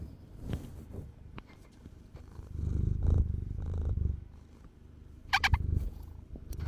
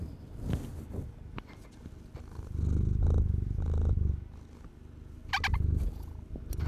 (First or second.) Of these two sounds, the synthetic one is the first